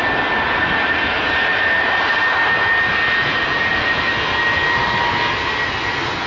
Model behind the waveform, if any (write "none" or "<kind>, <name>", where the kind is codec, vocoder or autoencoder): none